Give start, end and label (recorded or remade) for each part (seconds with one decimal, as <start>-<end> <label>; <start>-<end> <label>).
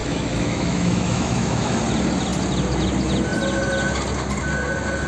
0.0-1.8 remade; 1.8-5.1 recorded